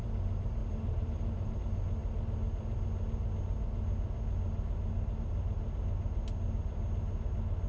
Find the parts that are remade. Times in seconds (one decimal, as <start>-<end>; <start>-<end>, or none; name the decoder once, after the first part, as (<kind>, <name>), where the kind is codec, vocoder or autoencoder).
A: 0.6-1.6 (vocoder, BigVGAN v2)